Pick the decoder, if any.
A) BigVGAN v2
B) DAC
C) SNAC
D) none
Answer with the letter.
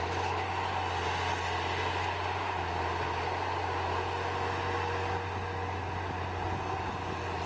D